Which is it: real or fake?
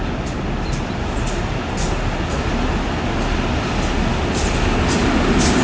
real